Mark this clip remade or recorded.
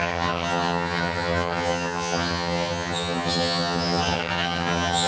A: remade